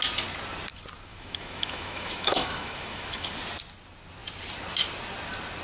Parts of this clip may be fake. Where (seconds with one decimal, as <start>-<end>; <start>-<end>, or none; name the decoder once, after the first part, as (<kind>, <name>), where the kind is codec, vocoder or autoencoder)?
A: 1.1-3.3 (autoencoder, DAC-VAE)